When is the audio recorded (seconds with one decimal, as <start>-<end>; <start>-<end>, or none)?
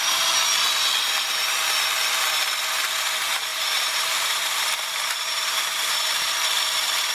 0.0-3.5; 6.3-7.1